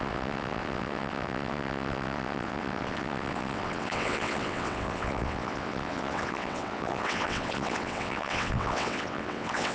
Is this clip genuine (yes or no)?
no